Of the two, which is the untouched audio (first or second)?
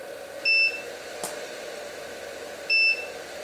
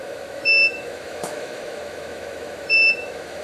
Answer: first